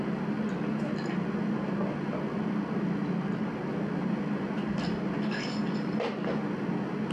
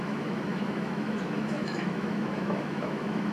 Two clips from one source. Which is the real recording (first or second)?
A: first